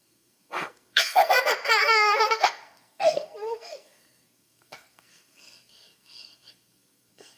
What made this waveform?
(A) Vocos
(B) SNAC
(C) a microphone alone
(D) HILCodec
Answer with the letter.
B